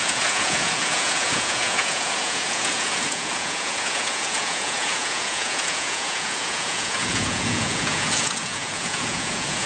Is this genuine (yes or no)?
no